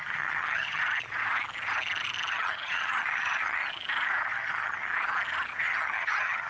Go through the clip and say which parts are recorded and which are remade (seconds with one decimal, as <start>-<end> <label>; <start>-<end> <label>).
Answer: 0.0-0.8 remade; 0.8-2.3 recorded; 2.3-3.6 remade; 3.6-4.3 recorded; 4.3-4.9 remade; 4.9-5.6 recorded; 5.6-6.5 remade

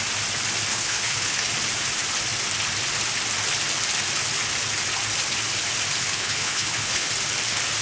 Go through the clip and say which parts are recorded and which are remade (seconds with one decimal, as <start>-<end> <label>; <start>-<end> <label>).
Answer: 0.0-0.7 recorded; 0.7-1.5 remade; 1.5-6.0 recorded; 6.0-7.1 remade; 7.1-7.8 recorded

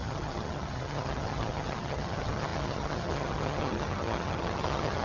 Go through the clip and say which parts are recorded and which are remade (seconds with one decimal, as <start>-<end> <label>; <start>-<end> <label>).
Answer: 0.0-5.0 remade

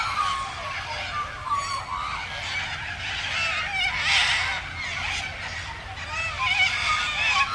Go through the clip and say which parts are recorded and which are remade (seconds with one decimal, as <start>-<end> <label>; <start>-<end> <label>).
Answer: 0.0-7.5 recorded

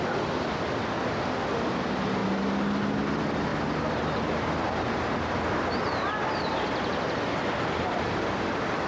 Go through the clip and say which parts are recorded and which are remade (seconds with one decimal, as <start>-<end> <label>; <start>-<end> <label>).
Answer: 0.0-2.2 remade; 2.2-2.8 recorded; 2.8-8.9 remade